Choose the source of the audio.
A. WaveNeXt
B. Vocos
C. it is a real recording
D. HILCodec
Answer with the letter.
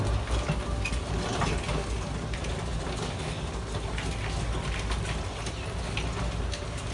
C